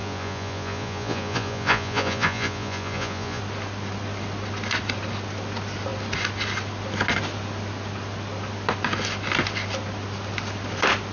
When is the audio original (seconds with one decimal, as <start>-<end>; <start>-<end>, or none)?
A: 3.4-11.1